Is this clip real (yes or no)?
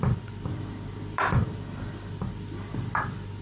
no